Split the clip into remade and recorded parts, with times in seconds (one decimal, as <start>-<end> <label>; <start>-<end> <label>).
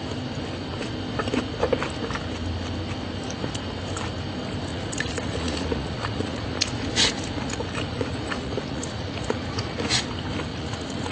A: 0.0-4.7 recorded; 4.7-10.0 remade; 10.0-10.5 recorded; 10.5-11.1 remade